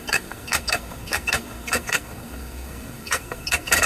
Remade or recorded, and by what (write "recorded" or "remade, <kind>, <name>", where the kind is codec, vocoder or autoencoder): remade, codec, SNAC